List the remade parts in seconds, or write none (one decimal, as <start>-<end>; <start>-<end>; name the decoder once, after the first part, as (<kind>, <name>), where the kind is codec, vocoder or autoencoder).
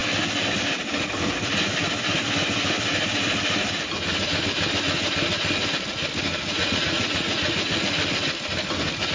6.3-7.8 (vocoder, Vocos)